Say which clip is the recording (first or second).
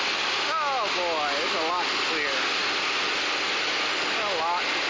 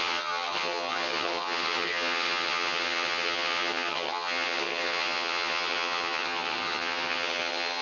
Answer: first